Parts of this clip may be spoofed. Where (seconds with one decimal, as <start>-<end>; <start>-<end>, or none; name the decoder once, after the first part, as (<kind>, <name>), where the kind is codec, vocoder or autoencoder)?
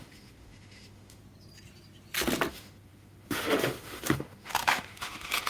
0.0-1.2 (autoencoder, DAC-VAE); 2.5-5.5